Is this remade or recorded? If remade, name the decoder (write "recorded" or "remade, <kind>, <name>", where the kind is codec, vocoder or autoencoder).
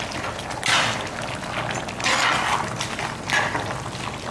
recorded